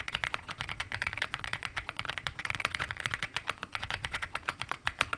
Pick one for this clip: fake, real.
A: fake